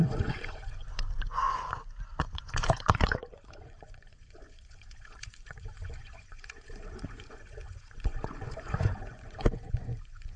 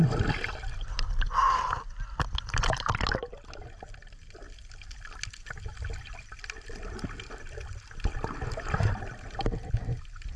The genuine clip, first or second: second